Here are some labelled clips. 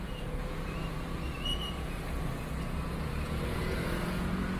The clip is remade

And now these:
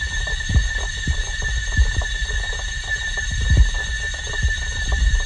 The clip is remade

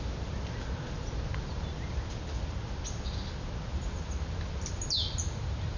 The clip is recorded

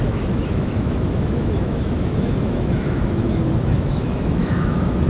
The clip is remade